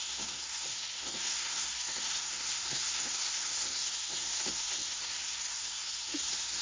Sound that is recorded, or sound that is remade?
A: remade